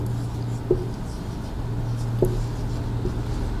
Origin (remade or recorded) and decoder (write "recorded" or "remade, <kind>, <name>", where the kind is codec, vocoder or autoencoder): recorded